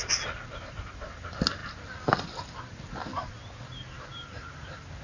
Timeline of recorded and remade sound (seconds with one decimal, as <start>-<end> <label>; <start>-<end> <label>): 0.0-5.0 recorded